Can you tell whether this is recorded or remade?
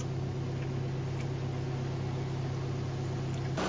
recorded